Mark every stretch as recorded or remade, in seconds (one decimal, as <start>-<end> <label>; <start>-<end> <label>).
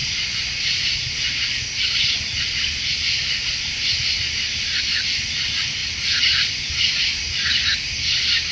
0.0-8.5 recorded